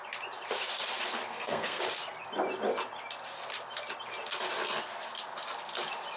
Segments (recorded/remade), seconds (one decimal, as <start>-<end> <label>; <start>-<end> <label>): 0.0-1.3 recorded; 1.3-1.8 remade; 1.8-6.2 recorded